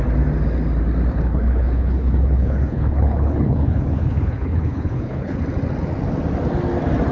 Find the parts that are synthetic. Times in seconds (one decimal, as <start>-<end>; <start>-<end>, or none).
1.1-5.4